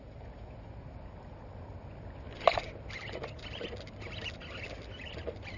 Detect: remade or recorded recorded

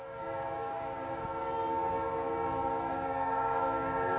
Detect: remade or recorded remade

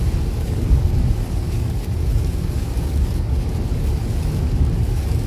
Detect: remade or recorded remade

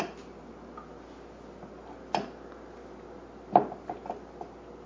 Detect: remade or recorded recorded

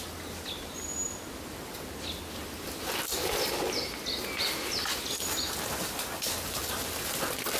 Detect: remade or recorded recorded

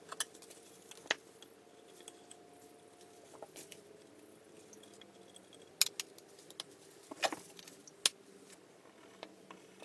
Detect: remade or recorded recorded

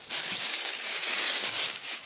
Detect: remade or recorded remade